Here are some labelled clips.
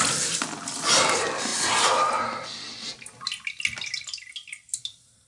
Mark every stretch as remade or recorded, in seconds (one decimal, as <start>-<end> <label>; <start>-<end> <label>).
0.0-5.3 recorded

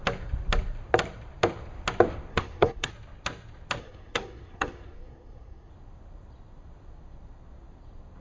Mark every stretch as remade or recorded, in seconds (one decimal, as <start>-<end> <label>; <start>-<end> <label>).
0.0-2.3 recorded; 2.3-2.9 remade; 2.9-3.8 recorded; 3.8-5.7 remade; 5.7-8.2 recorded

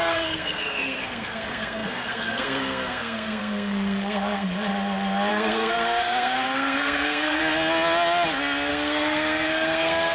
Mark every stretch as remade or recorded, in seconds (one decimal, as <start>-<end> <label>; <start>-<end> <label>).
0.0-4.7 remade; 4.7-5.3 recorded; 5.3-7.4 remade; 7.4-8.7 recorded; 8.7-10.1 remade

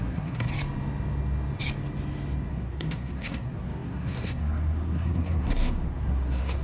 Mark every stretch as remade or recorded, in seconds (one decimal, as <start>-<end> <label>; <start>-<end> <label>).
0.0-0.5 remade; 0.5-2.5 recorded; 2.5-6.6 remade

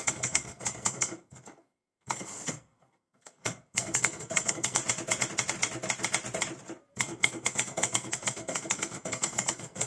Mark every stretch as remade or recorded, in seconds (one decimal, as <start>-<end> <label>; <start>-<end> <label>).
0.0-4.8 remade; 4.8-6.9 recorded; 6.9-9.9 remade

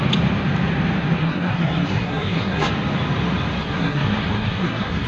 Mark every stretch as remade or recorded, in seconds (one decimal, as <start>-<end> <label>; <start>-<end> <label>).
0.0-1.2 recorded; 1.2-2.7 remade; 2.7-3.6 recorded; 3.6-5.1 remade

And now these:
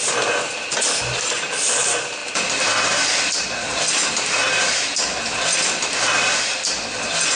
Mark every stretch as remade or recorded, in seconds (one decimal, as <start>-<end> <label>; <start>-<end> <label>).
0.0-7.3 recorded

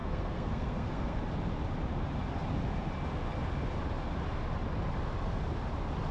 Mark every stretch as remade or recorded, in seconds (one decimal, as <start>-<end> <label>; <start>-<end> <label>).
0.0-1.2 remade; 1.2-6.1 recorded